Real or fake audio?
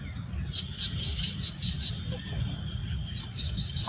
real